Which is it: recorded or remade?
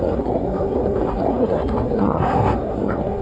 remade